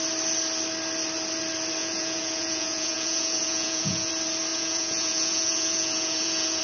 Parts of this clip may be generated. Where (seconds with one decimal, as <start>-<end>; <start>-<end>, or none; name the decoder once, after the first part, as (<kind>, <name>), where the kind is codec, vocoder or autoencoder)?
1.8-4.1 (vocoder, Vocos); 4.5-6.6